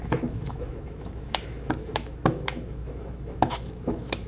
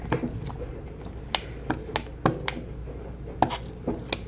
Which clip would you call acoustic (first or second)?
second